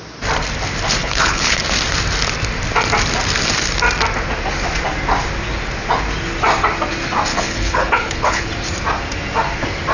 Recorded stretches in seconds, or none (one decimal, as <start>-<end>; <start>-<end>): 0.0-1.0; 1.6-7.3; 8.5-9.9